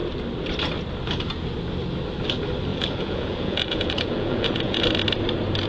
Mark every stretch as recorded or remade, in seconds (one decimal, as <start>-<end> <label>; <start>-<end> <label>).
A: 0.0-2.7 recorded; 2.7-4.8 remade; 4.8-5.7 recorded